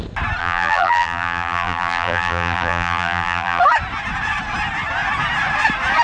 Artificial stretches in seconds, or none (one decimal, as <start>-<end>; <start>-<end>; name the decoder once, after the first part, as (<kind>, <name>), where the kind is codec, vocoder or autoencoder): 0.4-3.6 (vocoder, BigVGAN v2)